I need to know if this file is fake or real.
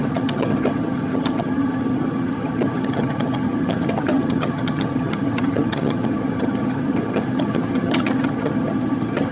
fake